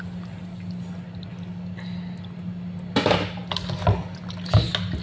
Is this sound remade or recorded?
recorded